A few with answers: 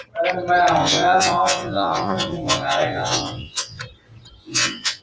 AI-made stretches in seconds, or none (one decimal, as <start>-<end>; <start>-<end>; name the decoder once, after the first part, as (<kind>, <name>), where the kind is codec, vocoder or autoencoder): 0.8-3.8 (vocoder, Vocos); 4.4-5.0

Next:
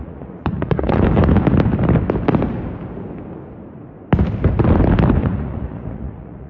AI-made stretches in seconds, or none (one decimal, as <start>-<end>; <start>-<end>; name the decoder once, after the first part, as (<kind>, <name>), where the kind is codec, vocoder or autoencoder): 0.0-1.0 (vocoder, Vocos); 5.2-6.5

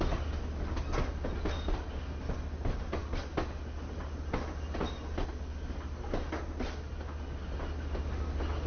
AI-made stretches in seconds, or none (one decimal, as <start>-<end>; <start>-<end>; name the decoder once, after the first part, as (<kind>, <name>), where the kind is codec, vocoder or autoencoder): none